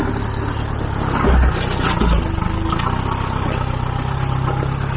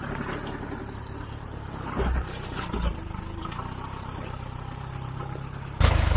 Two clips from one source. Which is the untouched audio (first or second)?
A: first